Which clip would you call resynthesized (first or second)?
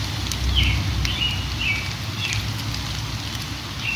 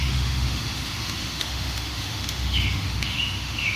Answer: second